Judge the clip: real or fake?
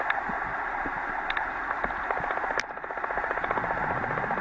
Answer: real